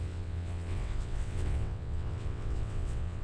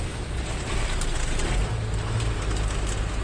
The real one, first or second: second